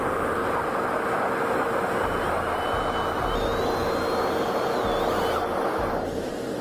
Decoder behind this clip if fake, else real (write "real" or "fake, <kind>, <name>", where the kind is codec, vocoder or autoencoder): real